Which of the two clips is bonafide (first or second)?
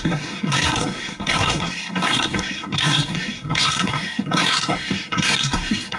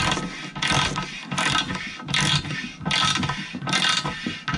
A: second